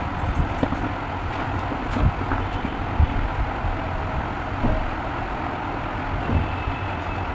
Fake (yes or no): no